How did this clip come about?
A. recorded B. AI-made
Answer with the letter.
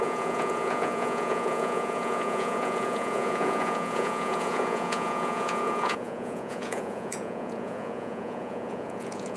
B